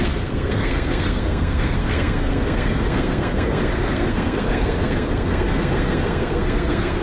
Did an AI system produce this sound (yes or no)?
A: yes